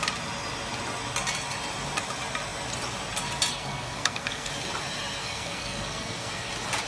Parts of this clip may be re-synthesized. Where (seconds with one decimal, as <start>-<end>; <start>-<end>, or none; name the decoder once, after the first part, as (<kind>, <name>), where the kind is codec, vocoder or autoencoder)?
3.5-4.5 (codec, SNAC); 5.2-6.5

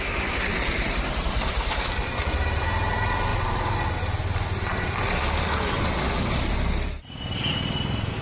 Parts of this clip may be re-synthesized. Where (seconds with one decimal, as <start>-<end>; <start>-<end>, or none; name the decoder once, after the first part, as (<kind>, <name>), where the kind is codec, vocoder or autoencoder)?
none

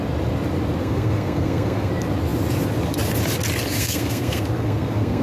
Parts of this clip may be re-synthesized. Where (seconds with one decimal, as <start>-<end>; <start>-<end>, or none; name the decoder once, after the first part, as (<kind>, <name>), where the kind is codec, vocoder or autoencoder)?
0.8-1.9 (codec, SNAC); 3.8-5.2

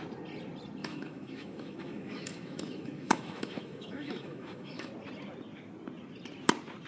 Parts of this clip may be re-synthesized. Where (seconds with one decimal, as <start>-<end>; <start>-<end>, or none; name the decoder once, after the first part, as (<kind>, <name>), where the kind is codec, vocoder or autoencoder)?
0.8-4.9 (autoencoder, DAC-VAE)

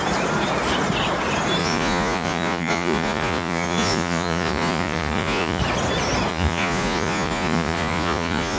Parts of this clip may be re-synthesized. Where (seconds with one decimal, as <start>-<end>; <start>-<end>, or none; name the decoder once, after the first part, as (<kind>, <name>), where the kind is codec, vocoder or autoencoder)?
1.6-5.6 (vocoder, Vocos); 6.3-8.6

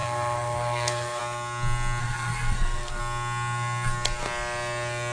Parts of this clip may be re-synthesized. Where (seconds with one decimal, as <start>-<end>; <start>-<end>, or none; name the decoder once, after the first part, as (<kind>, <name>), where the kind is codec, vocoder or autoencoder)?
0.0-1.2 (codec, SNAC); 2.0-3.0